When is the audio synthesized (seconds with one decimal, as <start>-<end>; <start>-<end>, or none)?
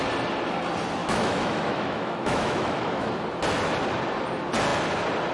1.0-3.1